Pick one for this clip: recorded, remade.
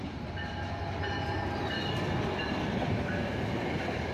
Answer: recorded